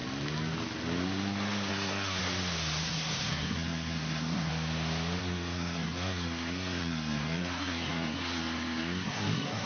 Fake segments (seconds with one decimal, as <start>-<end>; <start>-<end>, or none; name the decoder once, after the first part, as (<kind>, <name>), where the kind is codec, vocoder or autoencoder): 1.7-2.2 (codec, SNAC); 2.8-4.5; 5.2-9.7